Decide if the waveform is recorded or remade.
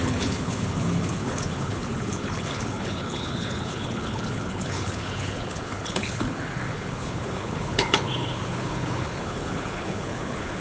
remade